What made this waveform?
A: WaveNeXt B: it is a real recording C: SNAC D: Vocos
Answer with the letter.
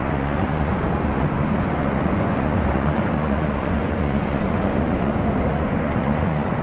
D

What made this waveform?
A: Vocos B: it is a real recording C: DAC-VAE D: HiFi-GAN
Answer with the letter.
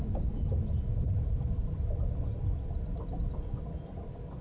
B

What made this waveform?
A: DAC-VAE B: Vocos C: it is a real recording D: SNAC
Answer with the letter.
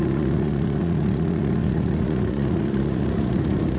B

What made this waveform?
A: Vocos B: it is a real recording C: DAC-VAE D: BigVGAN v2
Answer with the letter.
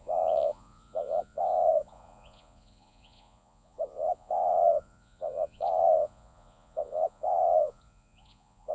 A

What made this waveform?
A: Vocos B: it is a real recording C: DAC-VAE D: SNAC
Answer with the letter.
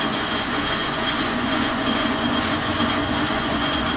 A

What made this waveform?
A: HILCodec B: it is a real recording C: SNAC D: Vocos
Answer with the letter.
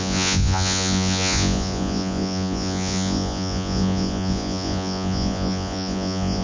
D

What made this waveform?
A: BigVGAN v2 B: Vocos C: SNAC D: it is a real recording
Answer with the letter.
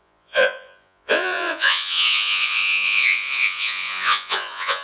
B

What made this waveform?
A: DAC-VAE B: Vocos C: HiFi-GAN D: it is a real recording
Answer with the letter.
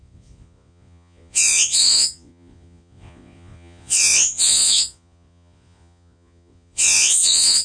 B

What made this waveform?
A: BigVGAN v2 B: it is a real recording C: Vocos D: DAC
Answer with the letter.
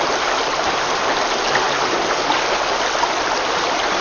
B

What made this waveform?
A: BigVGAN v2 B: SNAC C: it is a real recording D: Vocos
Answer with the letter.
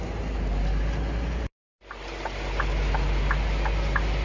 C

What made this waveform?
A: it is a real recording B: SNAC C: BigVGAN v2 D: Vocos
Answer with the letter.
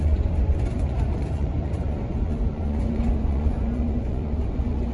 D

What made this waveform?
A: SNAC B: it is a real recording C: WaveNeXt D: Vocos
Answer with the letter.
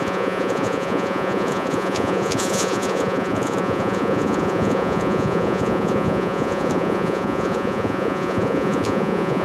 D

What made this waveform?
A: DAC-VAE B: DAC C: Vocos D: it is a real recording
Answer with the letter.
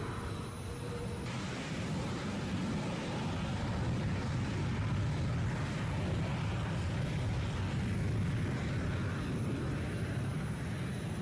D